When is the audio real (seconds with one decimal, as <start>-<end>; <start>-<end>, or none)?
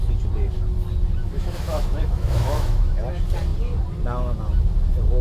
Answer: 0.0-1.2; 3.0-5.2